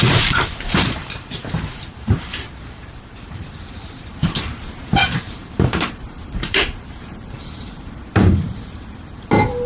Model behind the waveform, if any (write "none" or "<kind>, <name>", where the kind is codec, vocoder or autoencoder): vocoder, BigVGAN v2